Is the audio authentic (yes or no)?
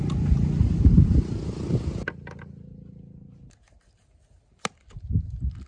yes